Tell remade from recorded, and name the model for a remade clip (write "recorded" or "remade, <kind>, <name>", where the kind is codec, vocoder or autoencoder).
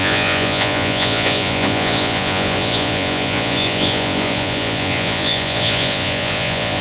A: remade, vocoder, Vocos